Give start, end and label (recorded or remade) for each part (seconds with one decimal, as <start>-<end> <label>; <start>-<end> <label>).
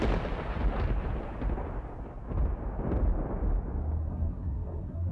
0.0-4.0 recorded; 4.0-5.1 remade